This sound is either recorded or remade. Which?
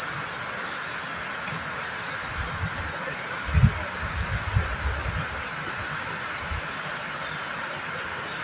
recorded